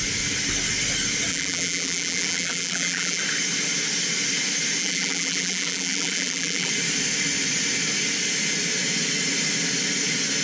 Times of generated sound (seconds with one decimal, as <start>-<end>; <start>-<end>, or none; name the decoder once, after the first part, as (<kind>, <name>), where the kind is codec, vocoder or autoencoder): 1.3-3.2 (vocoder, BigVGAN v2); 4.8-6.7